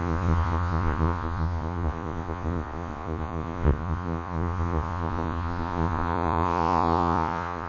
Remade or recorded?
remade